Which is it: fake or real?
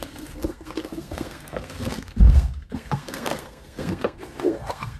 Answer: fake